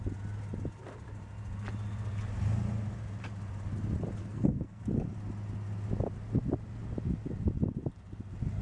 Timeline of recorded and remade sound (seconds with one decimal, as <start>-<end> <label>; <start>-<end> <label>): 0.0-4.2 recorded; 4.2-4.8 remade; 4.8-8.6 recorded